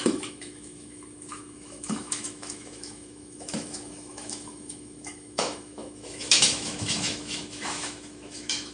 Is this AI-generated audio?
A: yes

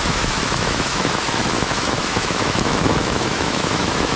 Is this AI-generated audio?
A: yes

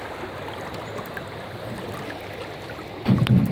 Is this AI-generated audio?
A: no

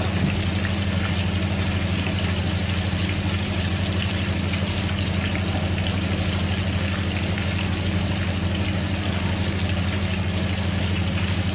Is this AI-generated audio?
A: no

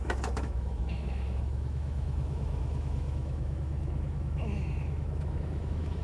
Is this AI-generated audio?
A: yes